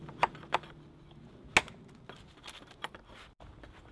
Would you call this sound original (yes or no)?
yes